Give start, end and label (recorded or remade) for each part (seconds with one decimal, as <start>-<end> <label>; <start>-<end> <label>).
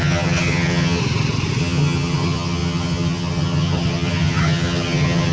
0.0-1.0 remade; 1.0-1.6 recorded; 1.6-5.3 remade